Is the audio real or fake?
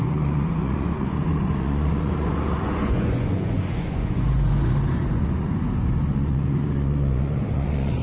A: fake